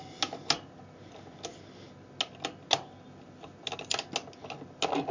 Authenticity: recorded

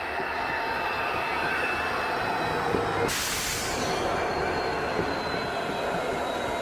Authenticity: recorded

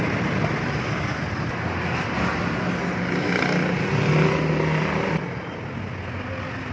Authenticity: recorded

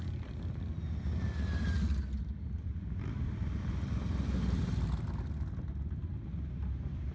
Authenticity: recorded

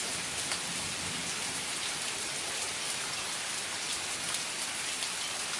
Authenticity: recorded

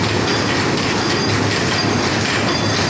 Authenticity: recorded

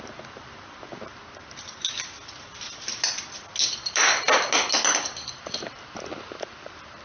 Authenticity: recorded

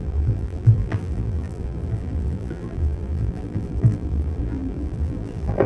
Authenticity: remade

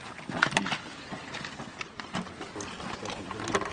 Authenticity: recorded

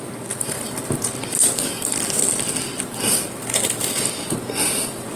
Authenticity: recorded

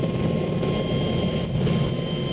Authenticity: recorded